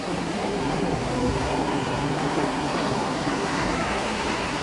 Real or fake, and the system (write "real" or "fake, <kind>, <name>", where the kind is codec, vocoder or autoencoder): fake, codec, SNAC